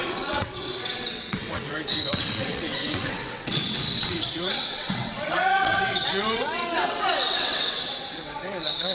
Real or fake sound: fake